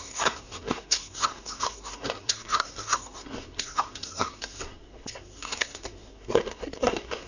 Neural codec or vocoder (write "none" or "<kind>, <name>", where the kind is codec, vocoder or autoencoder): codec, SNAC